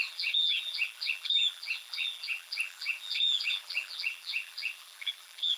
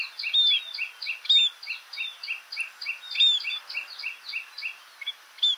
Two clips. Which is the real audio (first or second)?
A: second